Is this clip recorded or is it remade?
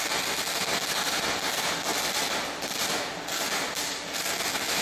recorded